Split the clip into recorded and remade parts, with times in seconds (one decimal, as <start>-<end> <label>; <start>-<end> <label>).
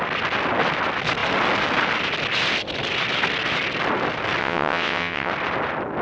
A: 0.0-4.4 recorded; 4.4-5.3 remade; 5.3-6.0 recorded